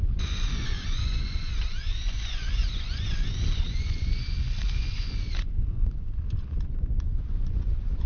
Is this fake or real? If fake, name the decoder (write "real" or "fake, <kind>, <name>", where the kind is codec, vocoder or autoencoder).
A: fake, vocoder, Vocos